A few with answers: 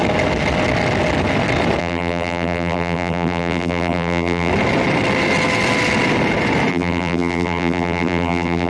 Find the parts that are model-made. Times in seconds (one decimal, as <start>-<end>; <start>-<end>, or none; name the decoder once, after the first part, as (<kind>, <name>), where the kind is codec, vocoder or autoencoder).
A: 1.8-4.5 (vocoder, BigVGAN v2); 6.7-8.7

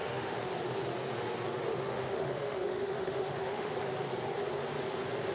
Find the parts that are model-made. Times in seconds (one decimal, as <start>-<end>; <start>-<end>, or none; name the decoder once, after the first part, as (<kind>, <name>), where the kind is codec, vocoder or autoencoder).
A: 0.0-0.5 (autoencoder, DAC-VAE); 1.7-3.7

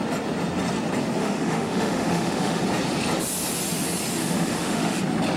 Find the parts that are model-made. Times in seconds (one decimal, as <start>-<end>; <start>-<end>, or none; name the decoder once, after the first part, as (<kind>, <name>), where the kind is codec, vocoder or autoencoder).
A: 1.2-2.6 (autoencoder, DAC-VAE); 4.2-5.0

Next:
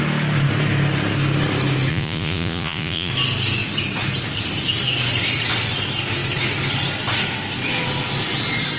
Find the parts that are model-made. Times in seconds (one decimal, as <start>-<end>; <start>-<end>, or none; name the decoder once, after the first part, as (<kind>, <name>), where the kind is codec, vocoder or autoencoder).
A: 1.9-3.1 (vocoder, Vocos)

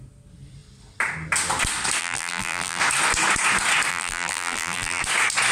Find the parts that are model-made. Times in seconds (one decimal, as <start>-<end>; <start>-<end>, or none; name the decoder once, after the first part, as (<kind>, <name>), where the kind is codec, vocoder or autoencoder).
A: 2.0-2.8 (vocoder, BigVGAN v2); 3.9-5.0